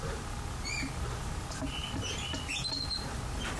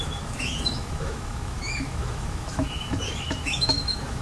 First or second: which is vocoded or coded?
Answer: second